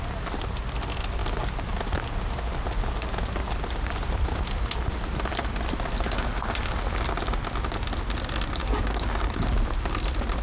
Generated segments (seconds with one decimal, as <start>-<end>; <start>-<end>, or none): 8.6-9.4